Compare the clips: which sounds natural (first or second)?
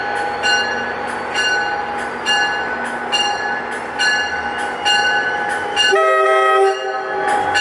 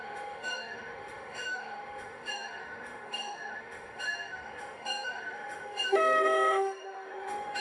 first